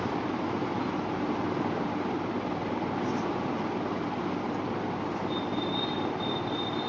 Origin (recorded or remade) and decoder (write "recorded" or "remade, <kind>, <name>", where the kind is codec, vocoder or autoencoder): recorded